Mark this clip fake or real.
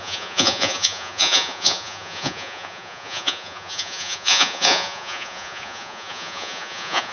fake